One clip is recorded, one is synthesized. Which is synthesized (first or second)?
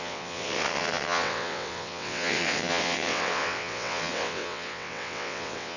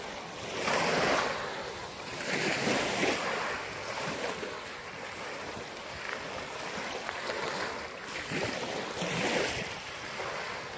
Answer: first